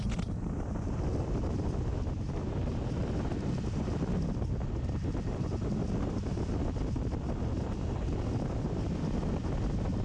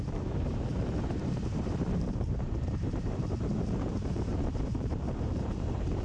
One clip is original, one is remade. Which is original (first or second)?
first